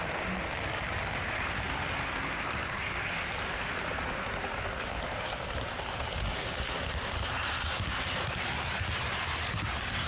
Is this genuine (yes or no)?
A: yes